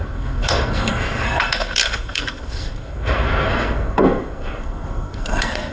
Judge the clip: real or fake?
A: fake